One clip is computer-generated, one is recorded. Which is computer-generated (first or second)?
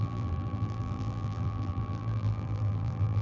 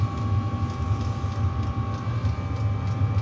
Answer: first